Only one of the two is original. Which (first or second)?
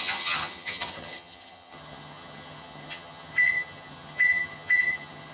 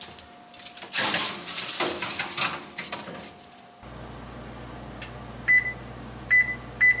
second